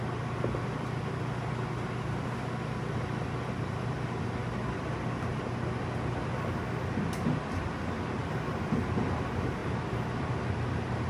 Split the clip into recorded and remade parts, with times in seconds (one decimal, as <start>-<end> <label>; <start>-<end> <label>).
0.0-11.1 recorded